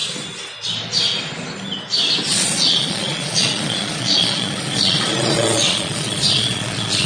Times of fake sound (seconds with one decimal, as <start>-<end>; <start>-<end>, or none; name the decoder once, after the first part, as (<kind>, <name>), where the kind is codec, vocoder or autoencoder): 2.3-7.1 (vocoder, Vocos)